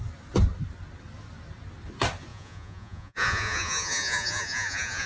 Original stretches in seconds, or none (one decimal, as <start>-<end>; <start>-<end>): 0.0-2.3